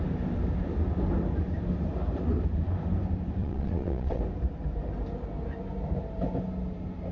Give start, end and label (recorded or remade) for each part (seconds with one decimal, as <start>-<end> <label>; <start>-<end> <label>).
0.0-3.4 recorded; 3.4-4.2 remade; 4.2-7.1 recorded